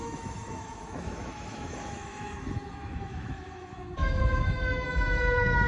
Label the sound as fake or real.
fake